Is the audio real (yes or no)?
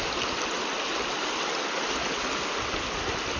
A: yes